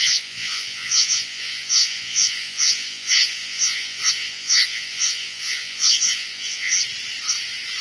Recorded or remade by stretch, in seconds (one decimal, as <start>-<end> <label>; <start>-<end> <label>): 0.0-6.7 remade; 6.7-7.8 recorded